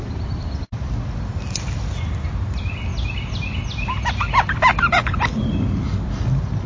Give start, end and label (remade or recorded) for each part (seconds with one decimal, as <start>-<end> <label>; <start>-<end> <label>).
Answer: 0.0-2.9 recorded; 2.9-3.6 remade; 3.6-6.7 recorded